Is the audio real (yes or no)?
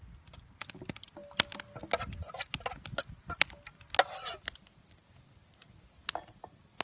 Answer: yes